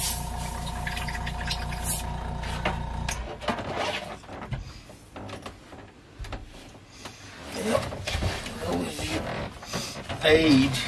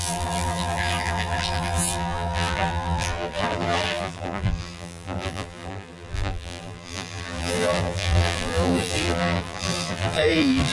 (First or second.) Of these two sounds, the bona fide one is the first